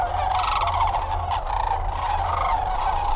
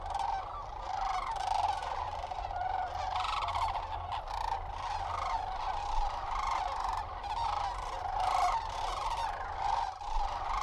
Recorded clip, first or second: first